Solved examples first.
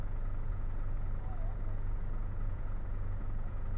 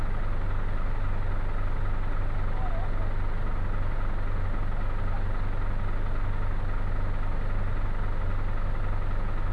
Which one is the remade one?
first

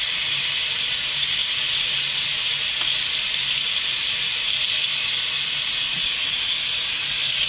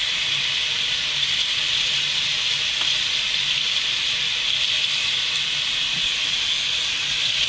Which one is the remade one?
second